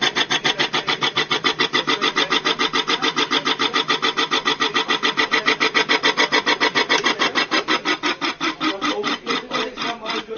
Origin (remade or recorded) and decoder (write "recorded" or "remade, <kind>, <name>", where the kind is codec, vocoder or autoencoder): remade, vocoder, BigVGAN v2